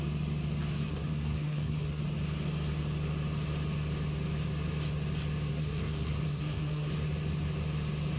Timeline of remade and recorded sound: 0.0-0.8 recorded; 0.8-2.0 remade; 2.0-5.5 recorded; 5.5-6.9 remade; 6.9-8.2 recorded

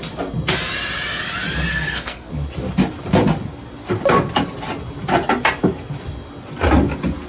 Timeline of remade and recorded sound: 0.0-1.7 recorded; 1.7-2.3 remade; 2.3-7.3 recorded

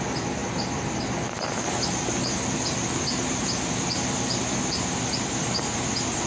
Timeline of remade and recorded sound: 0.0-6.3 recorded

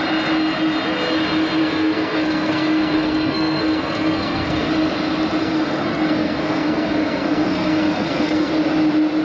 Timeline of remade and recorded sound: 0.0-1.6 recorded; 1.6-4.7 remade; 4.7-5.4 recorded; 5.4-8.5 remade; 8.5-9.2 recorded

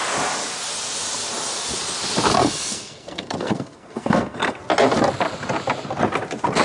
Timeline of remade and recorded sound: 0.0-2.4 recorded; 2.4-4.6 remade; 4.6-6.6 recorded

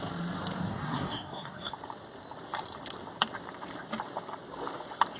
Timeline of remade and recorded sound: 0.0-0.7 recorded; 0.7-1.7 remade; 1.7-5.2 recorded

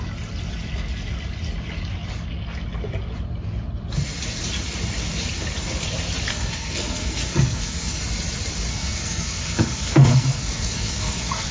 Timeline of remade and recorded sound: 0.0-6.3 recorded; 6.3-8.0 remade; 8.0-8.7 recorded; 8.7-11.5 remade

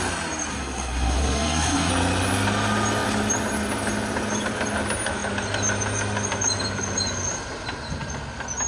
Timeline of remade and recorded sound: 0.0-0.5 recorded; 0.5-1.9 remade; 1.9-8.7 recorded